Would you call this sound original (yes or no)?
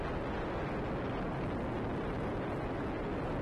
yes